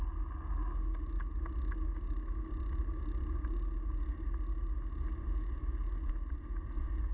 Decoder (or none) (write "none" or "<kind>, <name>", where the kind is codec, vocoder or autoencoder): none